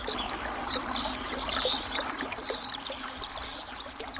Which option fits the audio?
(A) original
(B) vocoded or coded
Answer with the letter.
A